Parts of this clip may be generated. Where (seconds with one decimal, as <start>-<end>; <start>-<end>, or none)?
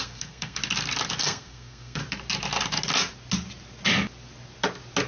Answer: 0.0-0.6; 1.2-2.0